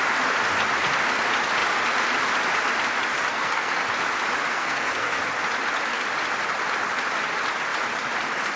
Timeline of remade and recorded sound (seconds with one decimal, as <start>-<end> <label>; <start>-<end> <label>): 0.0-3.3 recorded; 3.3-3.8 remade; 3.8-4.5 recorded; 4.5-5.2 remade; 5.2-8.6 recorded